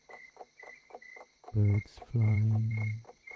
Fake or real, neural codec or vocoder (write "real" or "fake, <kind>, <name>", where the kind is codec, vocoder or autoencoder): fake, vocoder, BigVGAN v2